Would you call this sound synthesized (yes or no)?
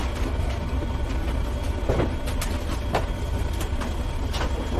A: no